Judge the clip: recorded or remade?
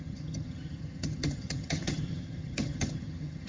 remade